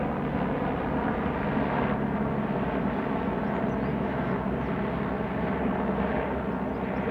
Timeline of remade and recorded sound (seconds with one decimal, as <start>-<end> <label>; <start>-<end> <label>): 0.0-3.9 recorded; 3.9-4.4 remade; 4.4-7.1 recorded